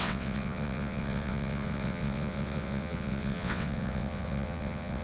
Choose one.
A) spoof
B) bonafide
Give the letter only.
A